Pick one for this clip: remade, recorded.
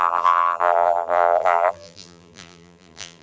remade